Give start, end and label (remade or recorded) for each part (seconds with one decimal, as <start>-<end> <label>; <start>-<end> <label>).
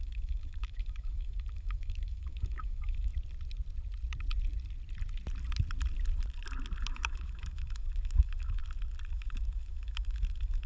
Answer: 0.0-3.1 remade; 3.1-6.8 recorded; 6.8-8.6 remade; 8.6-9.1 recorded; 9.1-10.7 remade